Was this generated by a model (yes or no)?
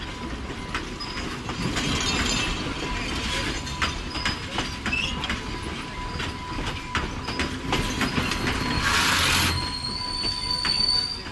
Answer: no